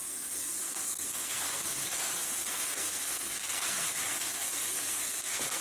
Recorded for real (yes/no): no